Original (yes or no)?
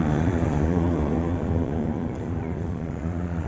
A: no